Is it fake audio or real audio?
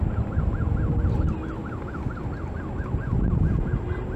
real